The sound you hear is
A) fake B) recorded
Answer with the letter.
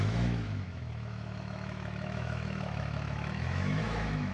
A